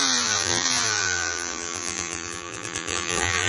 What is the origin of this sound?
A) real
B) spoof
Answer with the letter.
B